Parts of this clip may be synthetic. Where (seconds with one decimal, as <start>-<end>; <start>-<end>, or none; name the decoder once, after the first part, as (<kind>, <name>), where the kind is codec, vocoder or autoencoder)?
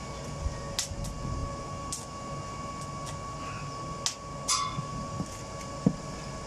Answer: none